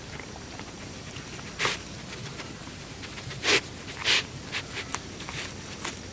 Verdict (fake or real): real